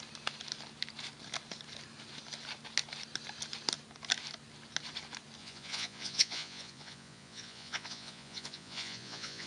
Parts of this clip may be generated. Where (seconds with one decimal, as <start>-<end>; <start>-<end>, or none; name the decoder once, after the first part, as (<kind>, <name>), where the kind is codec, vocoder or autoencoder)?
5.4-9.5 (vocoder, Vocos)